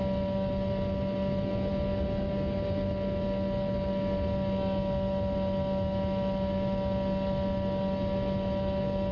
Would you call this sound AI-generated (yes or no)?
no